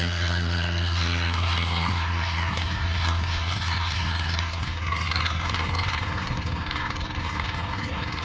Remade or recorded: remade